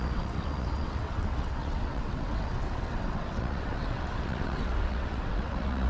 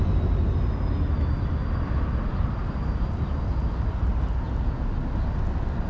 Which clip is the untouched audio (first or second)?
second